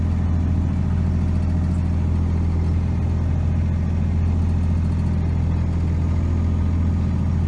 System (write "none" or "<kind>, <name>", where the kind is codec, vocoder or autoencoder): none